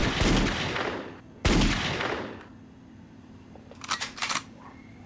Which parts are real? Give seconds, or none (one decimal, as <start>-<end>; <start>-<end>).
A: 0.0-3.1